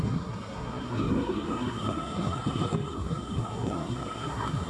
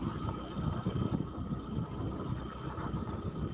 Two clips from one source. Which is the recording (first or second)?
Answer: second